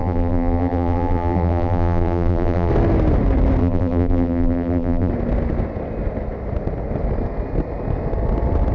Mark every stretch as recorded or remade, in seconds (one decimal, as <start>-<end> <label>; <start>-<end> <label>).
0.0-2.7 remade; 2.7-3.6 recorded; 3.6-5.1 remade; 5.1-8.7 recorded